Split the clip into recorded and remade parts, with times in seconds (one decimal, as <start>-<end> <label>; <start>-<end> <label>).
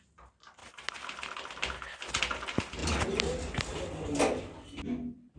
0.0-5.4 recorded